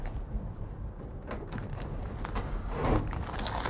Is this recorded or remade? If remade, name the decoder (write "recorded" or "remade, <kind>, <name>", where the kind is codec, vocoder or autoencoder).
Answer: recorded